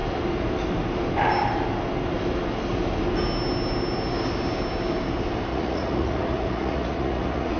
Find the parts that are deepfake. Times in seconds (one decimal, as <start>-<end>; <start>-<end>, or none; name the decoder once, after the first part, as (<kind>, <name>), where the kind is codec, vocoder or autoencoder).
5.5-7.6 (vocoder, Vocos)